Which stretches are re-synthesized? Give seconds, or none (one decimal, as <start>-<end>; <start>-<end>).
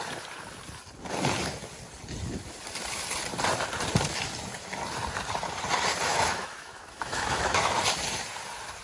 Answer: 6.1-7.8